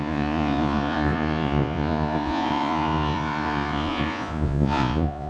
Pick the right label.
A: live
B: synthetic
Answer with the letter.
B